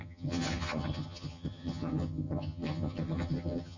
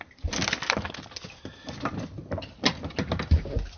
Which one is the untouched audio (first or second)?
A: second